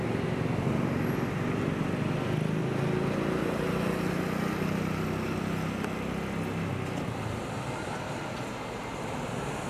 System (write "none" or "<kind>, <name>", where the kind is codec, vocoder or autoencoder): none